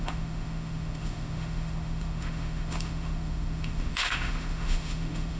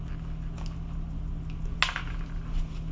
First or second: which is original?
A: second